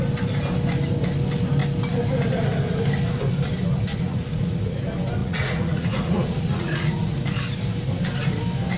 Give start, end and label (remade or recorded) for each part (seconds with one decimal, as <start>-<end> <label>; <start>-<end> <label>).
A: 0.0-3.9 recorded; 3.9-4.8 remade; 4.8-5.2 recorded; 5.2-7.2 remade; 7.2-8.8 recorded